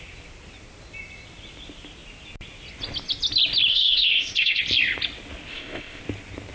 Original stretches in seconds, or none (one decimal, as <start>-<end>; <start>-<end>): 0.0-3.7; 4.6-5.5; 6.0-6.5